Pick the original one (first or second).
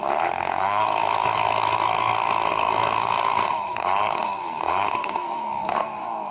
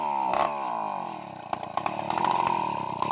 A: second